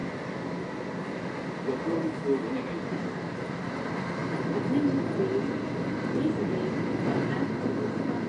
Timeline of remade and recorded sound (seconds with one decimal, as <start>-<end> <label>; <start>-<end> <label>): 0.0-2.8 recorded; 2.8-4.2 remade; 4.2-7.3 recorded; 7.3-8.3 remade